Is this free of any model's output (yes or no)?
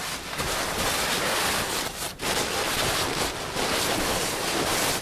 yes